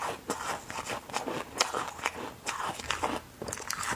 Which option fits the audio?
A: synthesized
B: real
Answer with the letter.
B